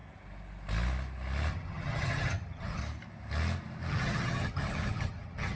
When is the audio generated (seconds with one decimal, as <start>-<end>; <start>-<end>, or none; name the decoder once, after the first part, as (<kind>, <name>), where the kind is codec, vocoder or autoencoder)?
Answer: 1.5-2.8 (vocoder, HiFi-GAN); 3.9-5.5